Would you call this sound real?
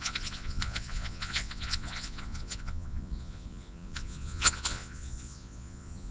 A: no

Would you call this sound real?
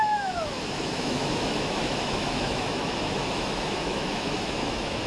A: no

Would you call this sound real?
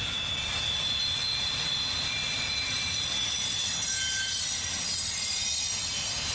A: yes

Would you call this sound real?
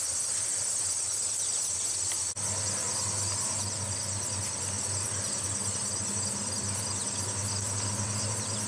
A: yes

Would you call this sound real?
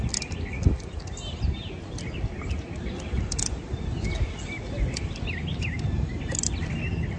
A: yes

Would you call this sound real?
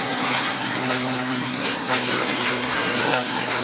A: no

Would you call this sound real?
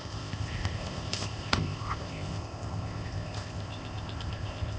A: no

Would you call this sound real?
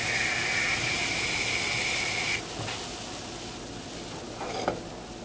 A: yes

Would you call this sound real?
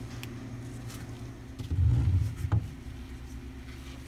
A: yes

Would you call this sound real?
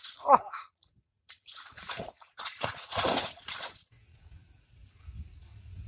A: no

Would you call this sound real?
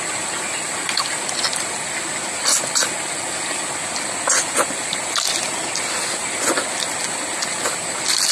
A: yes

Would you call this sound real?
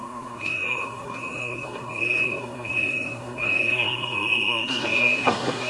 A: no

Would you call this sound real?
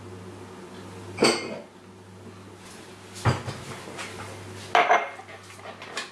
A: yes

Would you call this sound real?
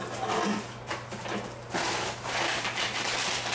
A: yes